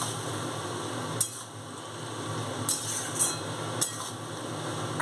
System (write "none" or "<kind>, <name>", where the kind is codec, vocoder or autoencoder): none